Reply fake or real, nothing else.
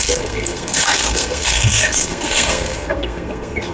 fake